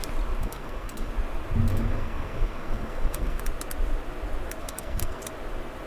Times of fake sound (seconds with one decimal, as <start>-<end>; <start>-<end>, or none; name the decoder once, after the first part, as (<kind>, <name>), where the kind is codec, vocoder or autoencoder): 0.4-1.1 (codec, SNAC); 1.7-3.4; 4.6-5.2